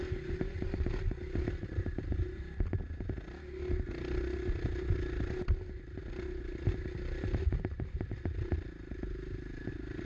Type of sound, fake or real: real